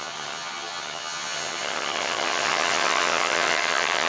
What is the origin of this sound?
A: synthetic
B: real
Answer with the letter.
A